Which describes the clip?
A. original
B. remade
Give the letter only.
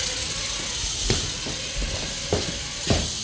A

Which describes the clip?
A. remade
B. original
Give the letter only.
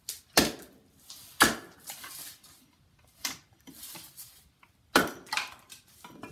B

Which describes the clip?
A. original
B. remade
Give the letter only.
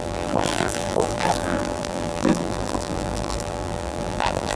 B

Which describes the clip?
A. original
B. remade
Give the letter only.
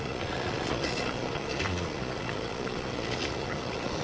B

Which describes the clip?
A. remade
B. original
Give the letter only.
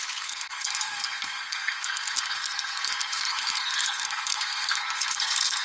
A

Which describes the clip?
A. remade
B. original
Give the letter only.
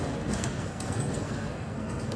A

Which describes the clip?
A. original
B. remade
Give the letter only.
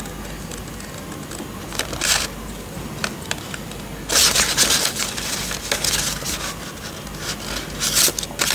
A